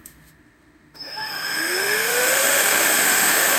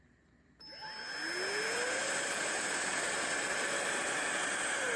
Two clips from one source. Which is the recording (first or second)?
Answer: second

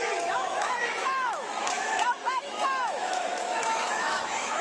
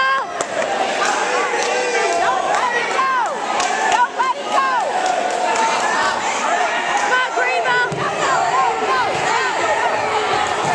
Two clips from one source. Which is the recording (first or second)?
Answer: second